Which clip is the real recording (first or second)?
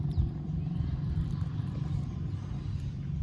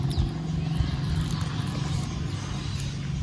second